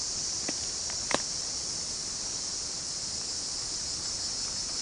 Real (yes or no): no